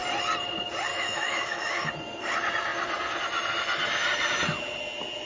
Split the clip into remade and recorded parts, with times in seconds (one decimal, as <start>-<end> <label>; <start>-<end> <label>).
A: 0.0-0.9 recorded; 0.9-1.9 remade; 1.9-5.3 recorded